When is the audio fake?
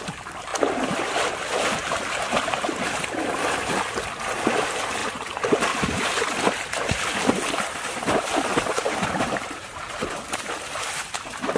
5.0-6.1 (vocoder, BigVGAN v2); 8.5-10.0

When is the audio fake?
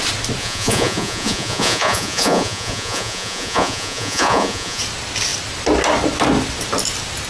0.4-4.8 (vocoder, Vocos)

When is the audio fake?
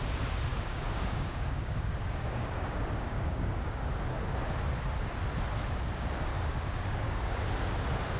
0.5-3.9 (codec, DAC); 6.3-7.4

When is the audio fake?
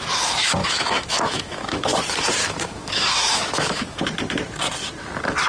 0.6-2.0 (autoencoder, DAC-VAE); 2.4-4.0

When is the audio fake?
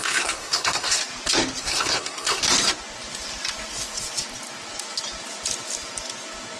0.0-1.0 (codec, SNAC); 1.6-2.4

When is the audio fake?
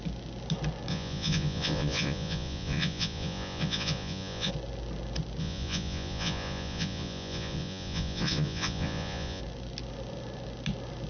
0.9-4.5 (vocoder, Vocos); 5.4-9.4